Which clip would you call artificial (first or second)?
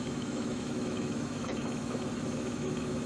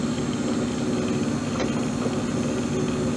first